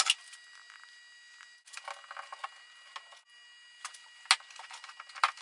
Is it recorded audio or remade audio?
recorded